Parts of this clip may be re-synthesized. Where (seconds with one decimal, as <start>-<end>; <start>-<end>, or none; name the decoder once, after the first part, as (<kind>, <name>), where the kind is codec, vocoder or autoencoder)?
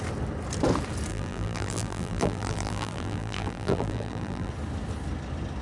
1.1-4.5 (vocoder, BigVGAN v2)